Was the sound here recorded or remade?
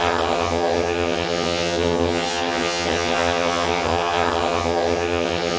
remade